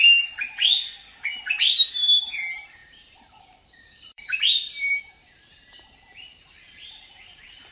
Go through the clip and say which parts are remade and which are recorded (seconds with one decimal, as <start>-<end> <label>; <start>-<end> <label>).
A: 0.0-0.7 remade; 0.7-1.3 recorded; 1.3-7.7 remade